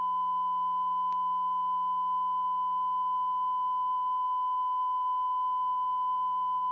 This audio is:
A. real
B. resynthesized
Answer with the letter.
A